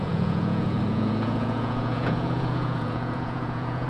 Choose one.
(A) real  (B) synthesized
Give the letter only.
B